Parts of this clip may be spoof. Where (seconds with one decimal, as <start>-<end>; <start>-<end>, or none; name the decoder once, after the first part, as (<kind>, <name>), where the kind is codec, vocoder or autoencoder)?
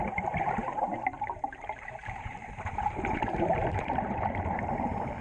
0.0-5.2 (vocoder, BigVGAN v2)